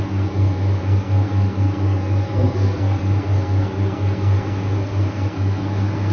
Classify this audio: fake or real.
fake